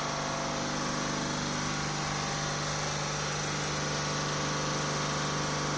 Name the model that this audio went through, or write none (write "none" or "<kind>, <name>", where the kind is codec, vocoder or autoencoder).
none